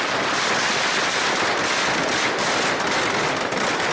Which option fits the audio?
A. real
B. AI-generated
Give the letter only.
A